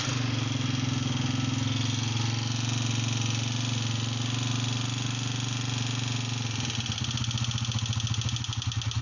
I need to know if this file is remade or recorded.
recorded